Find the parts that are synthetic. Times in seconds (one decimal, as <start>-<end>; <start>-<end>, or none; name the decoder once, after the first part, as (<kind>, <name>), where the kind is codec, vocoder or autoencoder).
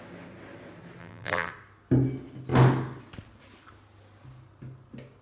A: 1.0-1.5 (vocoder, BigVGAN v2)